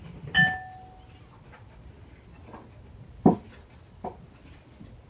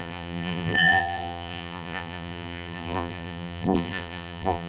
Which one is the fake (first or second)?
second